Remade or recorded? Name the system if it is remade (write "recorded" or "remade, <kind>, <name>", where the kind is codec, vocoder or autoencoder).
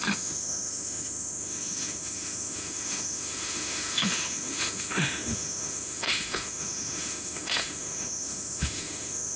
remade, autoencoder, DAC-VAE